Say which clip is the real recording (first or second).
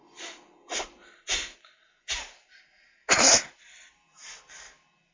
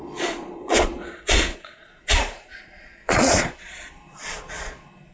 first